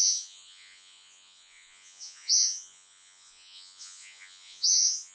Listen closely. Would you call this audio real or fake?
fake